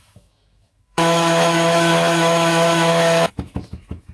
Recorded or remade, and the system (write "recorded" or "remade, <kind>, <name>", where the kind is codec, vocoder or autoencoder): remade, autoencoder, DAC-VAE